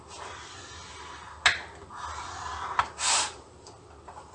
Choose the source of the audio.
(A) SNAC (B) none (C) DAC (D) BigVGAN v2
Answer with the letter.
B